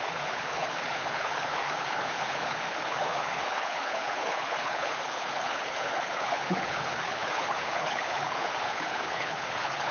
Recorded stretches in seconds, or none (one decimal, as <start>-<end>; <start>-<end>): none